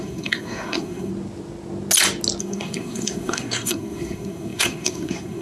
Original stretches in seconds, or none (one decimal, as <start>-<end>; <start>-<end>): 1.1-2.4